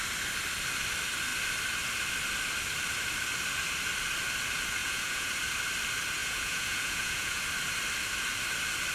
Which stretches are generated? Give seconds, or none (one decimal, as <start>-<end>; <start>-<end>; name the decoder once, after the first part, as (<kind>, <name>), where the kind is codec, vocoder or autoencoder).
4.8-5.3 (vocoder, Vocos); 6.2-7.4